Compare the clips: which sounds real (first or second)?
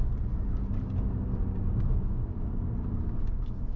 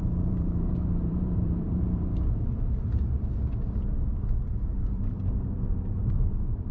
first